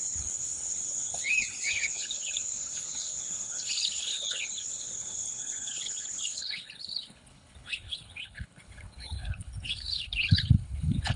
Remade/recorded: remade